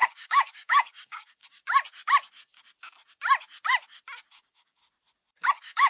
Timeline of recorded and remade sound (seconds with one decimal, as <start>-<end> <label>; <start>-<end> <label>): 0.0-1.6 remade; 1.6-4.3 recorded; 4.3-4.8 remade; 4.8-5.5 recorded; 5.5-5.9 remade